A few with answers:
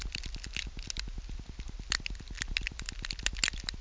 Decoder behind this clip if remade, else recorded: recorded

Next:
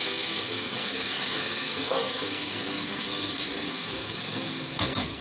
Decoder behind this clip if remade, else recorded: remade, codec, SNAC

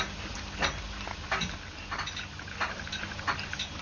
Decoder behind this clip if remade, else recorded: recorded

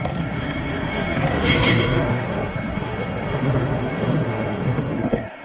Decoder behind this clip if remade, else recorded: remade, codec, SNAC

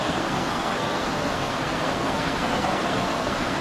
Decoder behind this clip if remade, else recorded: remade, codec, SNAC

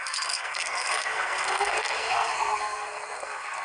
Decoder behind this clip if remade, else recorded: remade, codec, SNAC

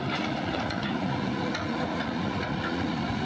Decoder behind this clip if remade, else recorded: remade, vocoder, Vocos